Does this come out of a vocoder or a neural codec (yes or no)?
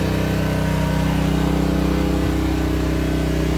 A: no